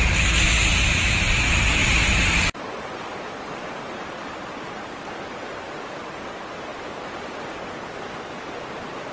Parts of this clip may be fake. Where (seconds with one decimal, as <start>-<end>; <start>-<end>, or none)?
none